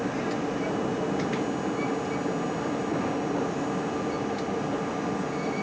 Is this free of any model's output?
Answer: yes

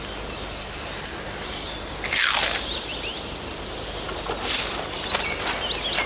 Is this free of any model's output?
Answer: yes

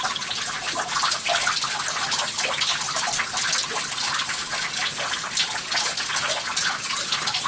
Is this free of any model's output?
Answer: yes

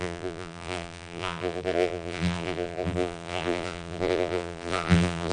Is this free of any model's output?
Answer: no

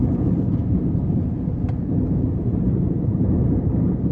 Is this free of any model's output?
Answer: no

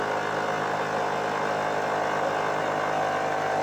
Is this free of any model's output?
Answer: yes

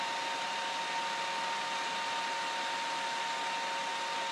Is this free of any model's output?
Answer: yes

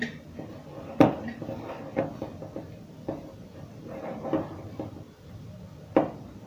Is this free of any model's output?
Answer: yes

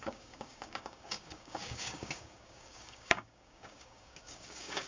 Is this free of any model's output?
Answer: no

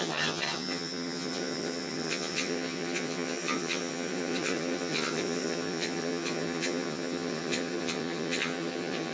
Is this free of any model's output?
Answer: no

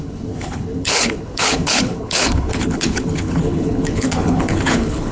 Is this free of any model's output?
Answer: no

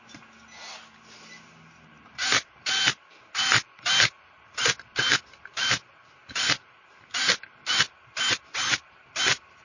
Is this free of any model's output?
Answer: yes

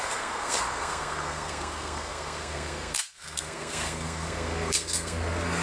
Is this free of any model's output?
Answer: no